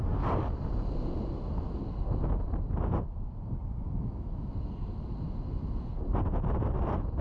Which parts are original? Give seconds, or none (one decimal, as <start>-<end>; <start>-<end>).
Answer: 0.0-3.7; 4.5-7.2